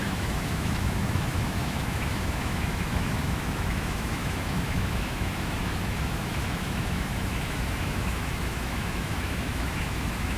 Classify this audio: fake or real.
fake